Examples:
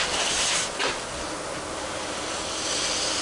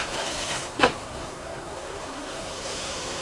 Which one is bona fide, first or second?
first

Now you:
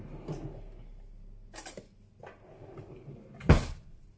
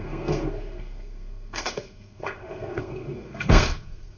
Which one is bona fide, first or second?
first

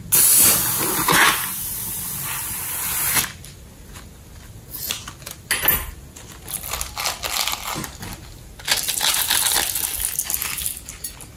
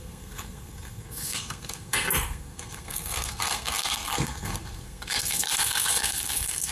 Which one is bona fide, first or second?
first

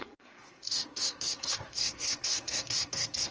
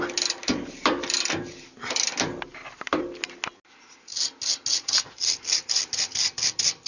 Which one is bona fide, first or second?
second